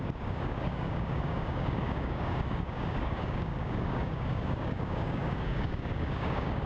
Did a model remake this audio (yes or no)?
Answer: yes